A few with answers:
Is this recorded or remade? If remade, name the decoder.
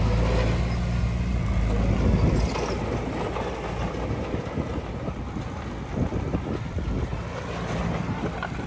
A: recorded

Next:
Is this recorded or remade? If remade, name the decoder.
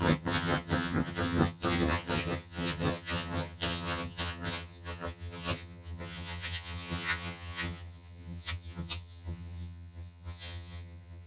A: remade, vocoder, HiFi-GAN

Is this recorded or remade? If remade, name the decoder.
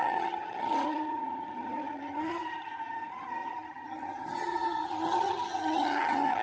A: remade, vocoder, HiFi-GAN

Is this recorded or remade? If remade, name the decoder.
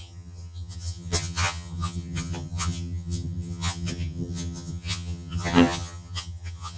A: remade, vocoder, HiFi-GAN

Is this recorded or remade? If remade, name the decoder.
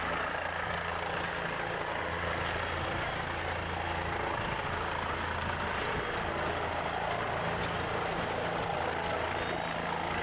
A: recorded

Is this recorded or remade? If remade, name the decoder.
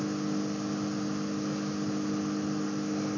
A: recorded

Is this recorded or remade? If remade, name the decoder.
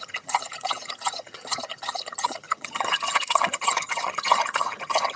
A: remade, vocoder, HiFi-GAN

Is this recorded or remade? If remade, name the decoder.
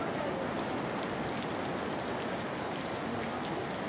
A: recorded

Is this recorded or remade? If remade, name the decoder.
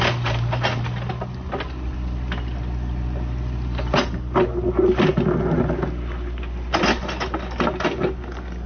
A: recorded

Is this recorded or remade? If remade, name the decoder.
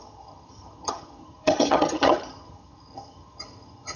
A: remade, vocoder, HiFi-GAN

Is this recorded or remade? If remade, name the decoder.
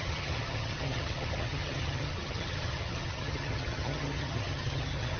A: remade, vocoder, HiFi-GAN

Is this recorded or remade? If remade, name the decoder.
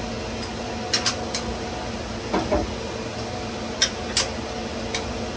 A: recorded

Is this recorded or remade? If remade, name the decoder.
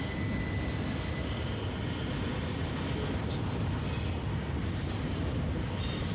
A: recorded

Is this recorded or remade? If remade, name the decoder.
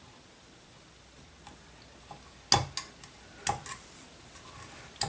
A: recorded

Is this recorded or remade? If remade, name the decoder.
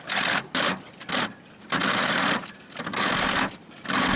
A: recorded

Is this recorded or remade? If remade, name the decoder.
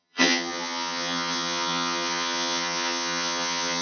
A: remade, vocoder, HiFi-GAN